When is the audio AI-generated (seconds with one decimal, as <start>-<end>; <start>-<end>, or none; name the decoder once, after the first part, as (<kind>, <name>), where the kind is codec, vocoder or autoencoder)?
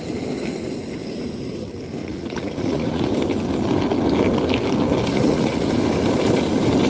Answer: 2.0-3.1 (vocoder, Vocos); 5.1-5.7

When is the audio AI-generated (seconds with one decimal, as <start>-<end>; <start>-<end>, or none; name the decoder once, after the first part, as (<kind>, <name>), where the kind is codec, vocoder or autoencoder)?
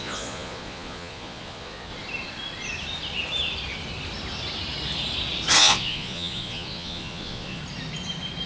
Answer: 0.0-1.9 (vocoder, Vocos); 5.6-7.6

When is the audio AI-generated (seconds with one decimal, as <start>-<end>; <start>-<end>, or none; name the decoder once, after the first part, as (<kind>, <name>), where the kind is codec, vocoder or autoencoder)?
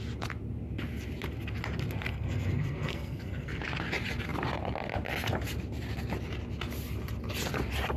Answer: 2.1-3.6 (codec, SNAC)